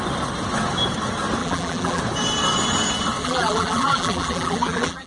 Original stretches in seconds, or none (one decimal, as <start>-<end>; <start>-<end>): 0.0-1.4; 2.0-3.2

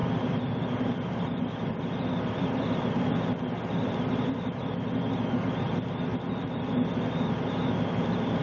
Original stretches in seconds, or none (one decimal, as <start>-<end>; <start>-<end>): 0.0-8.4

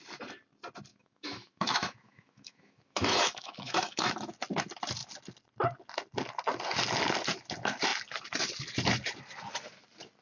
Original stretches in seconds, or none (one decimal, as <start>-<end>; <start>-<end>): 0.0-0.9; 4.1-10.2